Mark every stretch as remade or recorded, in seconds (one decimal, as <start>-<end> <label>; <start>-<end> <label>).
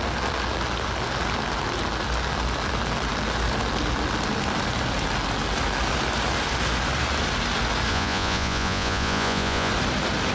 0.0-7.9 recorded; 7.9-9.7 remade; 9.7-10.3 recorded